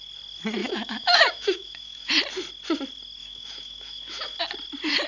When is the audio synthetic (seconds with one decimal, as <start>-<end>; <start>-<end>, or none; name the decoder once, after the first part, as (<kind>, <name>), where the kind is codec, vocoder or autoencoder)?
0.6-2.1 (autoencoder, DAC-VAE); 3.2-4.4